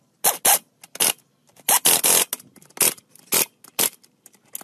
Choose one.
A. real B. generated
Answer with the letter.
A